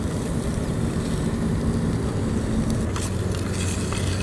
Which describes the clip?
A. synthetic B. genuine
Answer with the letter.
B